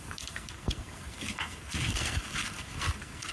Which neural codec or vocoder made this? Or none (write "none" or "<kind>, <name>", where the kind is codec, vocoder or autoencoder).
codec, SNAC